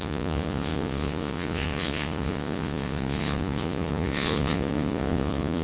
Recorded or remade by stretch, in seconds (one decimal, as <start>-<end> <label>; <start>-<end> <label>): 0.0-5.6 remade